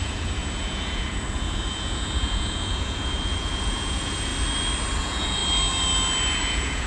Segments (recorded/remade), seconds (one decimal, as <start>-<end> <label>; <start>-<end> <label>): 0.0-4.3 remade; 4.3-5.0 recorded; 5.0-5.4 remade; 5.4-6.5 recorded; 6.5-6.9 remade